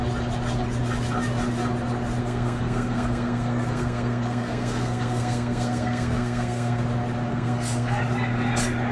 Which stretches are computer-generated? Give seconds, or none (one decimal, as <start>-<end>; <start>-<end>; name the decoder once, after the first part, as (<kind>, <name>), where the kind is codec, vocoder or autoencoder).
2.2-6.8 (codec, SNAC); 7.3-8.0